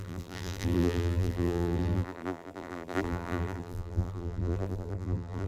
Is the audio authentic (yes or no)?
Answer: no